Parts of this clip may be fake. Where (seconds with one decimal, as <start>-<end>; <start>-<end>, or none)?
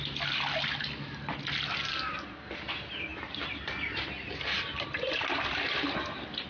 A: none